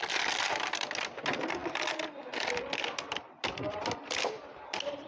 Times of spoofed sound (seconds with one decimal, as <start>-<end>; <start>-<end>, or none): none